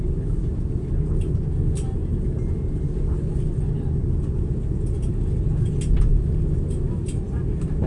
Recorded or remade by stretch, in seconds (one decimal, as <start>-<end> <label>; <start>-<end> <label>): 0.0-7.9 recorded